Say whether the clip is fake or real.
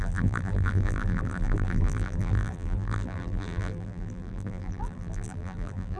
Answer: fake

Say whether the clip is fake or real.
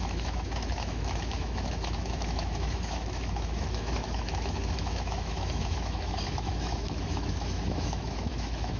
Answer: fake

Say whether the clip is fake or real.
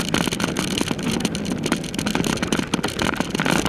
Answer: real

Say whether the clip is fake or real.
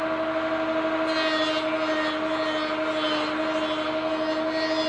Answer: real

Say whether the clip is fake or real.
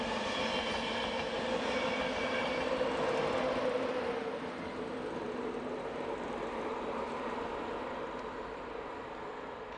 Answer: real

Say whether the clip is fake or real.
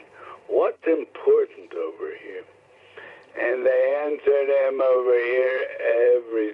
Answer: fake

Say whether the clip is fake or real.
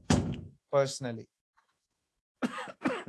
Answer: fake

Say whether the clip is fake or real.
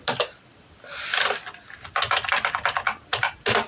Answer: real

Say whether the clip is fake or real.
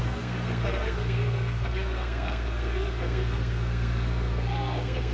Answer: fake